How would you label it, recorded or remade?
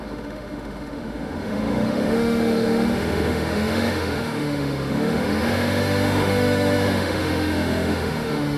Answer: remade